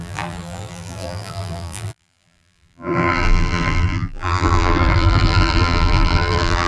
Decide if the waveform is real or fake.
fake